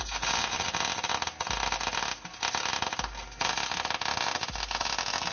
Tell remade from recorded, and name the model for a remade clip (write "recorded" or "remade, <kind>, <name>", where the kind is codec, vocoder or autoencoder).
recorded